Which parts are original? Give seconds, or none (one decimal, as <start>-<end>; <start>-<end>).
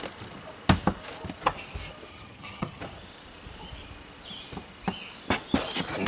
0.0-2.1; 2.8-6.1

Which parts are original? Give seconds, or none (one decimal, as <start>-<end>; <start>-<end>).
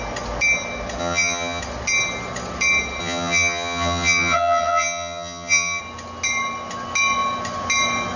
0.0-1.0; 1.6-3.0; 5.8-8.2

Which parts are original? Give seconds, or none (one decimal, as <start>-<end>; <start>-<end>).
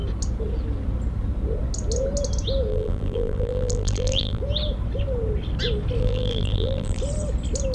0.0-2.7; 4.4-6.0; 7.0-7.7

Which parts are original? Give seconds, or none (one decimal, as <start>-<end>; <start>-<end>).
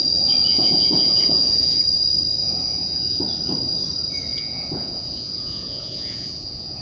0.0-0.5; 1.8-2.4; 3.2-4.3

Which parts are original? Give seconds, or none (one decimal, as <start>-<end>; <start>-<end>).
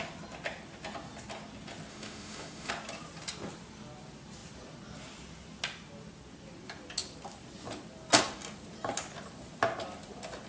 0.0-1.9; 2.7-10.5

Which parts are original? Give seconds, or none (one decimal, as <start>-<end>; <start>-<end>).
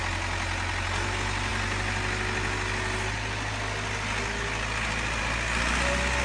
0.0-6.2